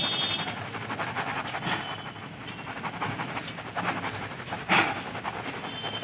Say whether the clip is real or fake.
real